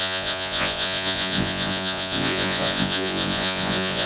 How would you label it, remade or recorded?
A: remade